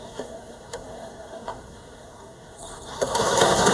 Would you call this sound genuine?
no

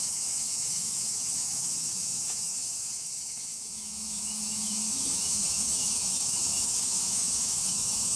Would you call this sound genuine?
no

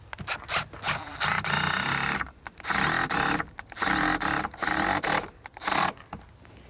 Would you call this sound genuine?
yes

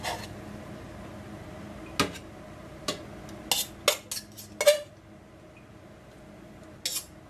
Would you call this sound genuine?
yes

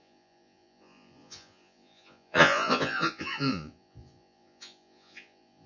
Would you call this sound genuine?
no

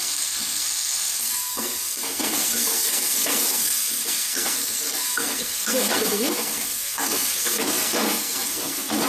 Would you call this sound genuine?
no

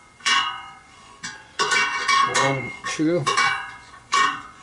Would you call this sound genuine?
no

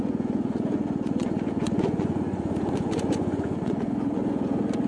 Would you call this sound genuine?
no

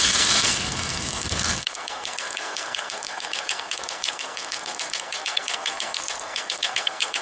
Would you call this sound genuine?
no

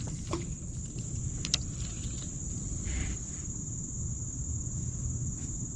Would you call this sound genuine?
yes